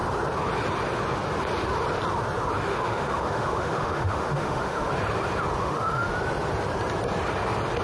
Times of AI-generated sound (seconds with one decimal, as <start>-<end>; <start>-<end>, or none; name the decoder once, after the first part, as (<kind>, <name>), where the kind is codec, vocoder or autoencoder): 2.7-4.9 (autoencoder, DAC-VAE); 5.6-6.1